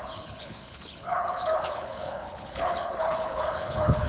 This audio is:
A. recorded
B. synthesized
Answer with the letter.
B